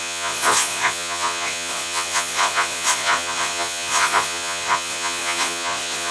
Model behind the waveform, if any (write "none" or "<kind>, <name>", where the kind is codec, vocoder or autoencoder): vocoder, Vocos